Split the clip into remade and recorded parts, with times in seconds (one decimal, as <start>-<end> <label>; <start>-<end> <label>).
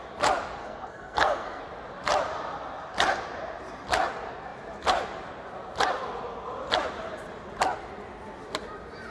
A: 0.0-0.6 recorded; 0.6-1.6 remade; 1.6-9.1 recorded